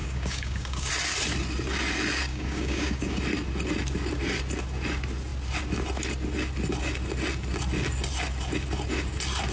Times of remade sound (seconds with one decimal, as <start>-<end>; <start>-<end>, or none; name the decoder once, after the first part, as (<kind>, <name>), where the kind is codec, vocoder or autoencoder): 0.0-0.9 (codec, DAC); 2.3-3.2